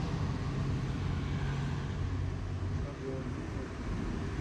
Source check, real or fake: real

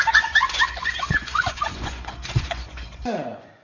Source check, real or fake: fake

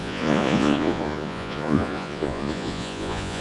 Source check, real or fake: fake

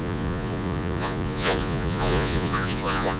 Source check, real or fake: fake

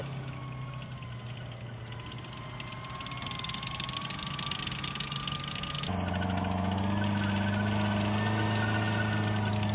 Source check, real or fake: real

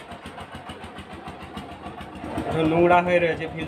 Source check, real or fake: real